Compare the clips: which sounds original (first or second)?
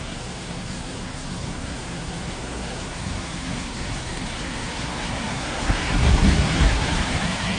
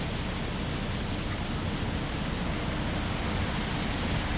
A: second